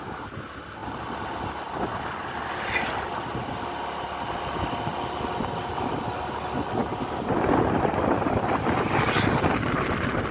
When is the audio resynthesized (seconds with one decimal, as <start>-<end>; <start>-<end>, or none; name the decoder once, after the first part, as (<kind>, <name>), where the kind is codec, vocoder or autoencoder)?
none